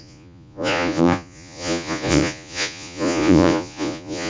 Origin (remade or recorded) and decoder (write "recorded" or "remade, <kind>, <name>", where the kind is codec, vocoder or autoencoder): remade, vocoder, Vocos